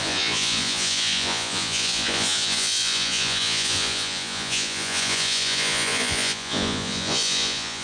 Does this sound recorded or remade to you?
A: remade